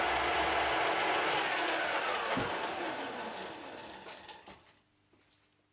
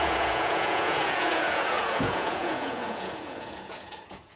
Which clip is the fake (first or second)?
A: second